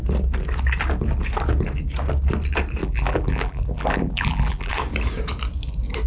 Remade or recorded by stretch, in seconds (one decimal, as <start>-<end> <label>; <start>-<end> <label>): 0.0-2.8 recorded; 2.8-4.7 remade; 4.7-6.1 recorded